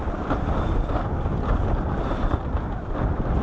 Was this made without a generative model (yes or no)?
yes